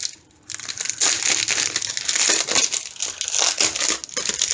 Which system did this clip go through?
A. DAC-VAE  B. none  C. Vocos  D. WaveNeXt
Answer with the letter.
B